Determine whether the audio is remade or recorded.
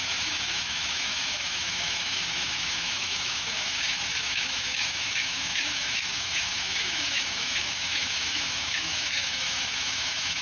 remade